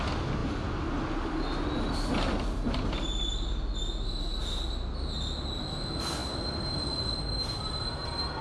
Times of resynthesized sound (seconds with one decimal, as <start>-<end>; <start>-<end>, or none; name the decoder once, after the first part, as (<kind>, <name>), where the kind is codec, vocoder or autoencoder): none